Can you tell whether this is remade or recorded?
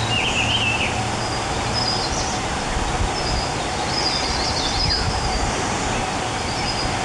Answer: recorded